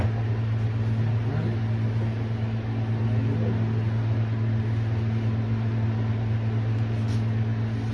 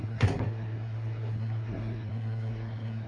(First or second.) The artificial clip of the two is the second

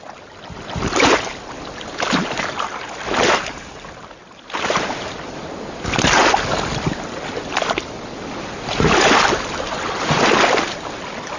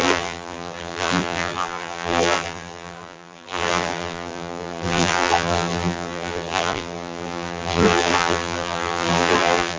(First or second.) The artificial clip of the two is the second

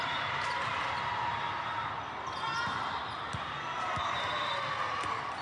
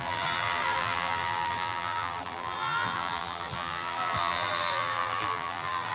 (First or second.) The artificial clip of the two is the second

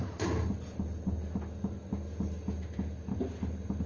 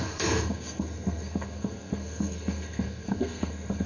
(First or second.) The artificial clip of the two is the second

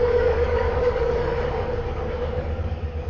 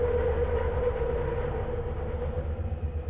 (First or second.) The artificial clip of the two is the first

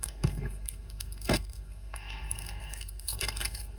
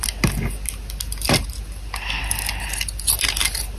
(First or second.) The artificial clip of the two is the first